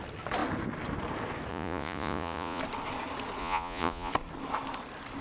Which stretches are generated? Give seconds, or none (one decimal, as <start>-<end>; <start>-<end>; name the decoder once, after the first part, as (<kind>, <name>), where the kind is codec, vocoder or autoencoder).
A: 1.5-2.6 (vocoder, Vocos); 3.4-4.1